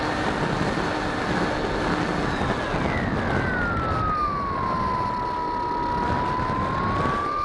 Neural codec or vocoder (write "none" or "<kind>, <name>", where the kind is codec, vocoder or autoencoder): none